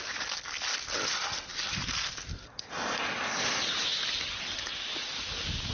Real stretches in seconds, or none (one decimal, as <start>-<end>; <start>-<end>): 0.0-5.7